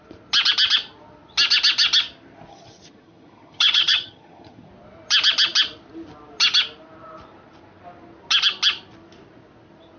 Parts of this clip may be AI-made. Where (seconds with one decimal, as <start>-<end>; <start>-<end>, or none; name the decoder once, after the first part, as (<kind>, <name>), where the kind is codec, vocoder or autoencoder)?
2.5-4.7 (vocoder, HiFi-GAN)